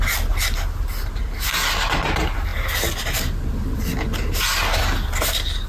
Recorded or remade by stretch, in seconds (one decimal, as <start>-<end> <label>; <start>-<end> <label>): 0.0-5.7 recorded